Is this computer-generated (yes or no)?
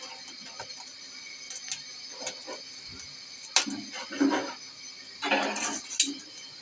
no